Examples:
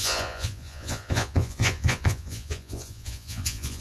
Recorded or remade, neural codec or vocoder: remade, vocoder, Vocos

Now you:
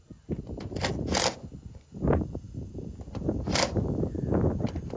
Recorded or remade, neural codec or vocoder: recorded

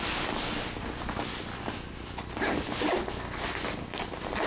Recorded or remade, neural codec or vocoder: recorded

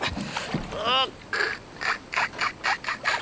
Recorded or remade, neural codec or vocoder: recorded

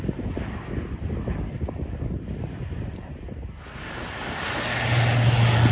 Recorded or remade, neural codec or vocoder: recorded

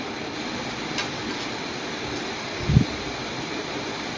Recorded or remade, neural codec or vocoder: recorded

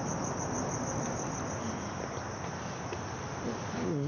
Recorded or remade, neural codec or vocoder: recorded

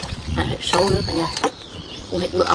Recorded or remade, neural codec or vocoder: remade, vocoder, Vocos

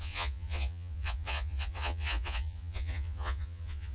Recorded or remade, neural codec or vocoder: remade, vocoder, Vocos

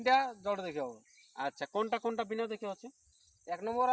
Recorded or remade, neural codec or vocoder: recorded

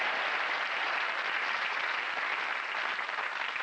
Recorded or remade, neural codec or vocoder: recorded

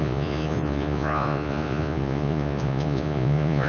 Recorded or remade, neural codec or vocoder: remade, vocoder, Vocos